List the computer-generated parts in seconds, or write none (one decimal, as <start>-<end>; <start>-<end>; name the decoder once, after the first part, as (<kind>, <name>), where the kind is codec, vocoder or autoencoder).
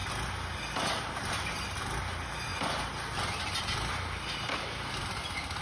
none